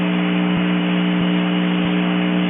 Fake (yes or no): no